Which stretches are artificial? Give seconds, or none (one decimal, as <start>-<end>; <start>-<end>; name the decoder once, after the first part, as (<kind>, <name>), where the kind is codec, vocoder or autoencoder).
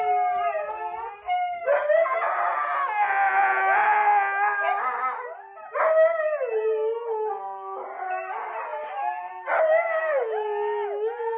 none